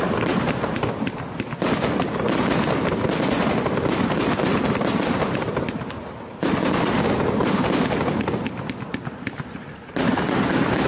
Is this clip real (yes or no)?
yes